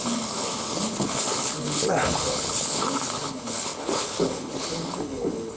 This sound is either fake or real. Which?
fake